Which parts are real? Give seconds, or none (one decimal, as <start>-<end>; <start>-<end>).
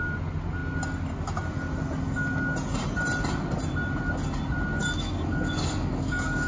0.0-4.8